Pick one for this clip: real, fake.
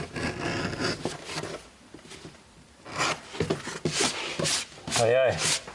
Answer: real